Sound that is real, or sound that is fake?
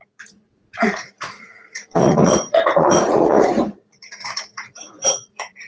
fake